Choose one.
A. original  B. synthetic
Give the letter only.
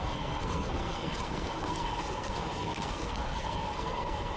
B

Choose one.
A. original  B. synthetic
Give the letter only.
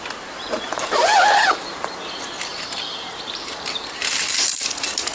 B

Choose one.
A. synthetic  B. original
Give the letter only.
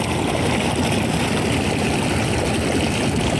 B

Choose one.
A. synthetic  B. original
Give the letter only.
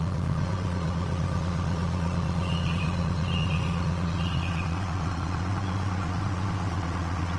A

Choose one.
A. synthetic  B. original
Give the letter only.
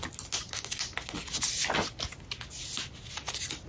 B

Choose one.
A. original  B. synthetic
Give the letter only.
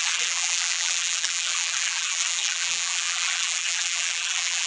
B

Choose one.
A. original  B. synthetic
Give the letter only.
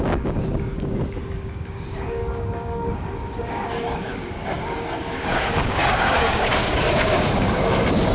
B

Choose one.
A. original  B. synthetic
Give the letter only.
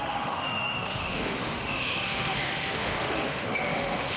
B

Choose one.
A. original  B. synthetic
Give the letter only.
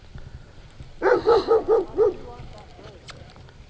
A